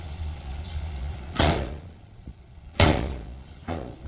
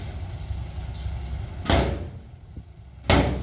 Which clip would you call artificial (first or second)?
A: first